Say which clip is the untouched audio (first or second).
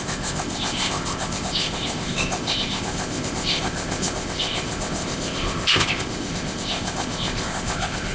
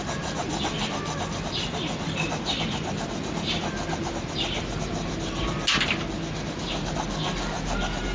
second